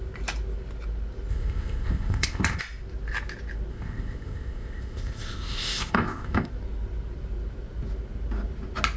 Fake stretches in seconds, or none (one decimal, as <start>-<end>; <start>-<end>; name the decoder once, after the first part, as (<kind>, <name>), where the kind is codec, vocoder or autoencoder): 1.3-2.6 (codec, ZipCodec); 3.7-6.5